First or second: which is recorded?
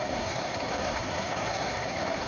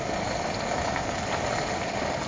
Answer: second